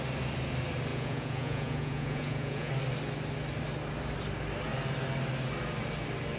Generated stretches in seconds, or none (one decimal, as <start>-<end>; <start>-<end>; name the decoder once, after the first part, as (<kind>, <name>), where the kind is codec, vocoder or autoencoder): 0.9-2.7 (vocoder, Vocos)